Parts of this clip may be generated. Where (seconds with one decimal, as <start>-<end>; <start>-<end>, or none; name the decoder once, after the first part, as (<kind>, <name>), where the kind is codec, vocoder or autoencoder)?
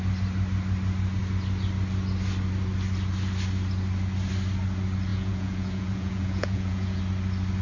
5.1-7.0 (vocoder, Vocos)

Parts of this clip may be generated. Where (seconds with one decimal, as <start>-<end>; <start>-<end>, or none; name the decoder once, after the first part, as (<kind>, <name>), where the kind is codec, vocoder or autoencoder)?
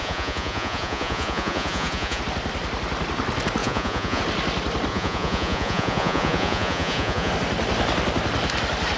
0.0-2.2 (vocoder, Vocos); 3.6-4.2; 4.9-7.3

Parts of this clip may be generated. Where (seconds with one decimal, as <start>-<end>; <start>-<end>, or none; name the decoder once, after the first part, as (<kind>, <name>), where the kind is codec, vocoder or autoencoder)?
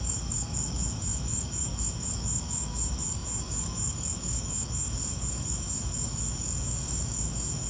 0.0-7.7 (autoencoder, DAC-VAE)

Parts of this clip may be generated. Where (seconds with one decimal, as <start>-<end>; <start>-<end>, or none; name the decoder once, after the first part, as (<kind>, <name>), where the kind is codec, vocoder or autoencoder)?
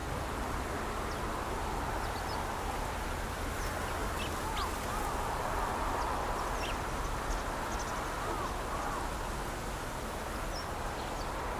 4.0-7.0 (vocoder, BigVGAN v2)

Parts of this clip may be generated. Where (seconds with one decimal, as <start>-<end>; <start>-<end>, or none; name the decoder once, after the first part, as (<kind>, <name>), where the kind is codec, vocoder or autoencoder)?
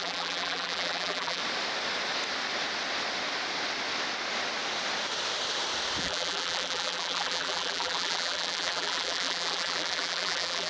0.0-1.4 (vocoder, BigVGAN v2); 6.0-10.7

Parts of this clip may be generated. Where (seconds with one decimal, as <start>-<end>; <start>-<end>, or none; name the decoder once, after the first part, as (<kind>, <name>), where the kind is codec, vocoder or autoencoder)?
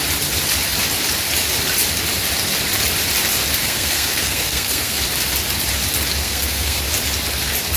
3.6-5.0 (codec, SNAC); 6.2-6.8